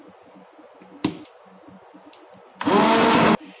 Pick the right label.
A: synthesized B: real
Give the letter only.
B